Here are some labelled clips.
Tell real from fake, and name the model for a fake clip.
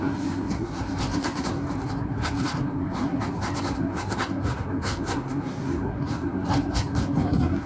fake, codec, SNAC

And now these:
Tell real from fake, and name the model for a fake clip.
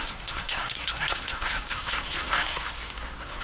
fake, codec, SNAC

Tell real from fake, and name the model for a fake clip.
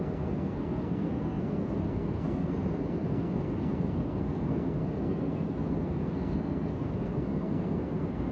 fake, codec, SNAC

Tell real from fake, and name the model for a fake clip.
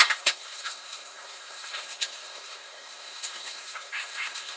fake, codec, SNAC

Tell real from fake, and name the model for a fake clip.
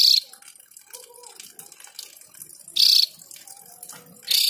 real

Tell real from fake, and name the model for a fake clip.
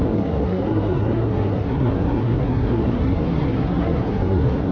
fake, codec, SNAC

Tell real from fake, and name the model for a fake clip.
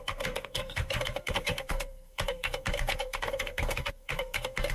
fake, codec, SNAC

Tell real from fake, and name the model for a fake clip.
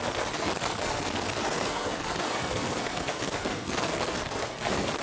fake, codec, SNAC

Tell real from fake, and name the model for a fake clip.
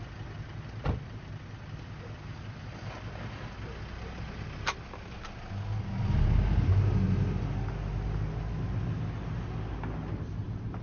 real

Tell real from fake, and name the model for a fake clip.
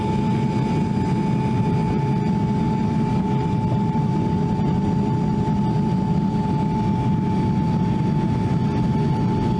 real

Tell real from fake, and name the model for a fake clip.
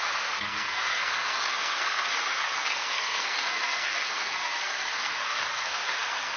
fake, codec, SNAC